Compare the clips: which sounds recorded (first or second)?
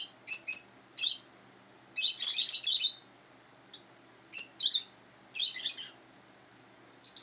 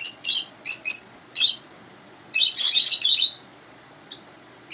first